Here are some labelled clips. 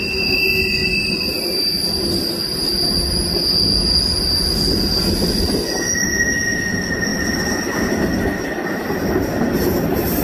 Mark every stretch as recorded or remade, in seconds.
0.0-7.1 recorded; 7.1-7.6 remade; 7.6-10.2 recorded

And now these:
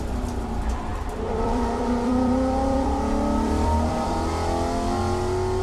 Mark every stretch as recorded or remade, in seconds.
0.0-0.9 recorded; 0.9-4.3 remade; 4.3-5.6 recorded

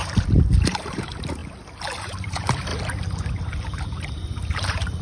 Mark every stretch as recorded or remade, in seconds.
0.0-1.4 remade; 1.4-2.0 recorded; 2.0-2.7 remade; 2.7-3.3 recorded; 3.3-5.0 remade

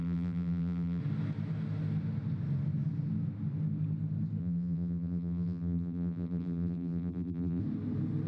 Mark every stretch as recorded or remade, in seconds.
0.0-1.0 remade; 1.0-4.4 recorded; 4.4-7.6 remade; 7.6-8.3 recorded

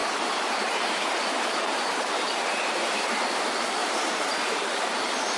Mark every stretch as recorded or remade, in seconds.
0.0-3.2 remade; 3.2-3.8 recorded; 3.8-4.5 remade; 4.5-5.4 recorded

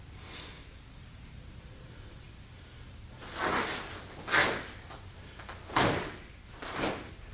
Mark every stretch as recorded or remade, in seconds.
0.0-1.0 recorded; 1.0-2.1 remade; 2.1-7.3 recorded

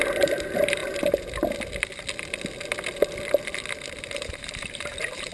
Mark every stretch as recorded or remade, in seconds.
0.0-0.8 remade; 0.8-4.0 recorded; 4.0-5.3 remade